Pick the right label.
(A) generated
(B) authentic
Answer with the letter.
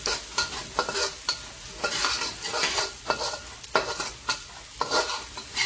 B